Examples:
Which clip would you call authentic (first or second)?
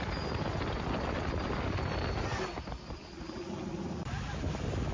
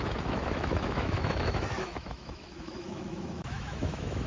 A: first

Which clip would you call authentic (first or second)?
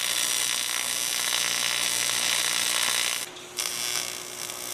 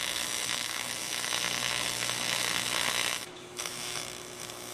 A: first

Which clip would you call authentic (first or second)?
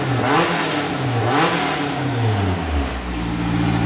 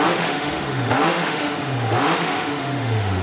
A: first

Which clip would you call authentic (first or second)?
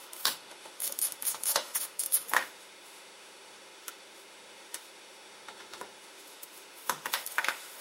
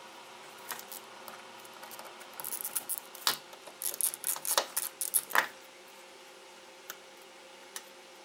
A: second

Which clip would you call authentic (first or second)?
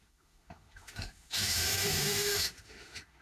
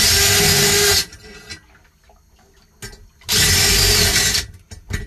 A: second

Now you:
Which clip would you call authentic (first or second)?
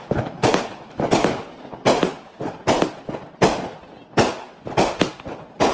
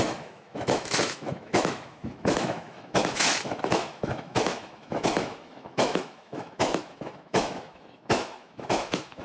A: first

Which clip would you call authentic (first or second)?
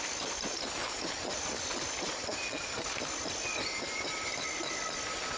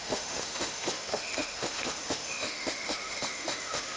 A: first